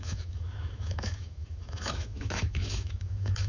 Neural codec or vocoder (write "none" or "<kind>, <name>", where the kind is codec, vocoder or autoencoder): autoencoder, DAC-VAE